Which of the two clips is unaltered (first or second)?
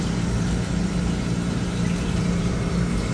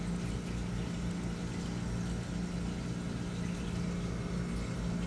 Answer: second